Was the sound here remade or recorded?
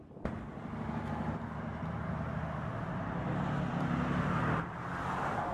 remade